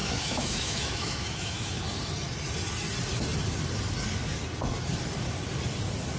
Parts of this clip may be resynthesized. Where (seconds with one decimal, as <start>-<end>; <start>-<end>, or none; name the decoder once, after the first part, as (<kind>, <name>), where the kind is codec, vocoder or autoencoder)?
0.0-1.8 (autoencoder, DAC-VAE)